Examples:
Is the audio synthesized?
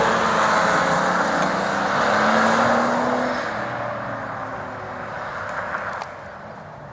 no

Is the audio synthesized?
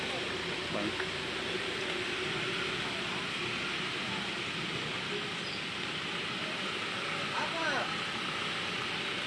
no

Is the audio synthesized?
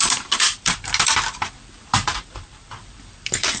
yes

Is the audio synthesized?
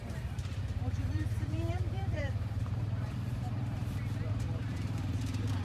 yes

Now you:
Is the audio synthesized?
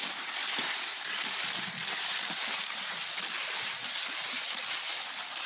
yes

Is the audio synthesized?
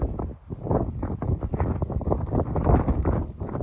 yes